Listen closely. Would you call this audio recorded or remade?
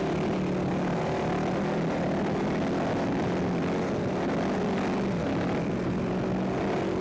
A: recorded